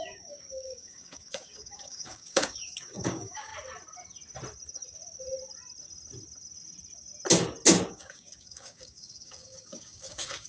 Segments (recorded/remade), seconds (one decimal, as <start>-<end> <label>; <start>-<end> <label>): 0.0-3.5 remade; 3.5-7.9 recorded; 7.9-10.5 remade